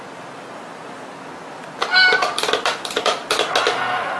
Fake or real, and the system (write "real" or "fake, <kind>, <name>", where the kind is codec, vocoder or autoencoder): real